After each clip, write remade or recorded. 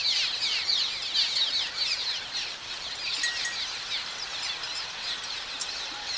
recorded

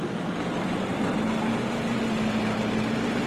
recorded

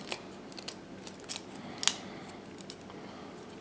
recorded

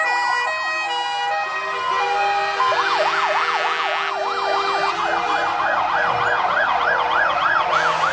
recorded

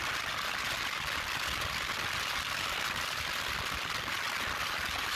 recorded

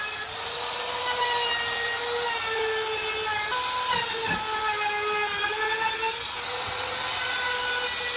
recorded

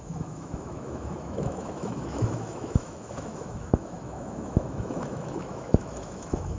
remade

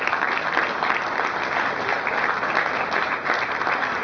recorded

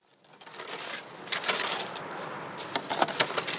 recorded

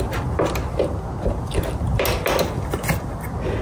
recorded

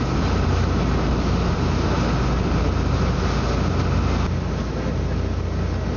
recorded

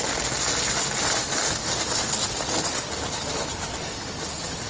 recorded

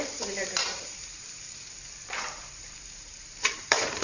remade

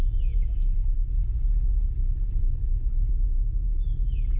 recorded